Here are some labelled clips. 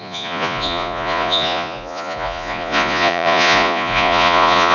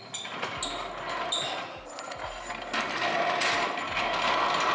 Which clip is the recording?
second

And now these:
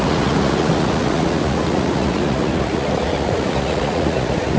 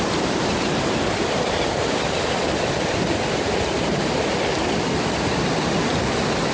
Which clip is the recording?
second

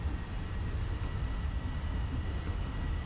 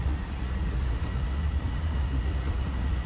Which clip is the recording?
first